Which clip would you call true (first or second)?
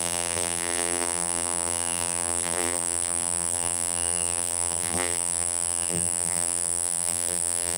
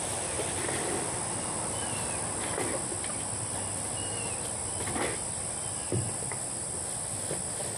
second